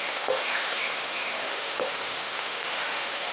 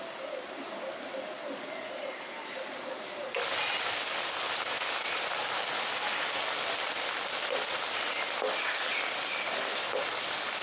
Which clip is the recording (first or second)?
second